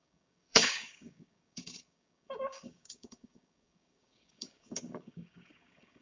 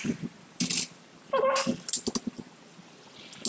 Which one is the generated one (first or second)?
first